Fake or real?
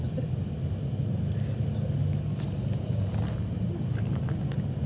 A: real